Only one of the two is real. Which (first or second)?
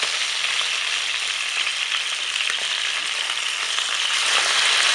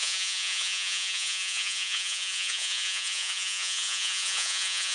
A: first